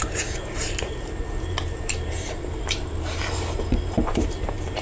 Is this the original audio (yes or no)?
no